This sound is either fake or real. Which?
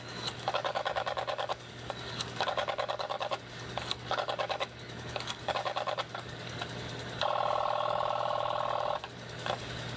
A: fake